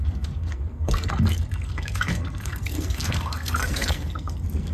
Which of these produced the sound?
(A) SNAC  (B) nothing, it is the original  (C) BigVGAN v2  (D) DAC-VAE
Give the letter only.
A